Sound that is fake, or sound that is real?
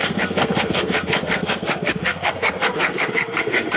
fake